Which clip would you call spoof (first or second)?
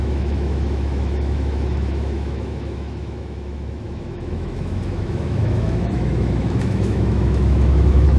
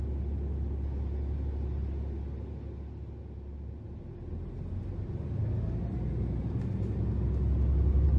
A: first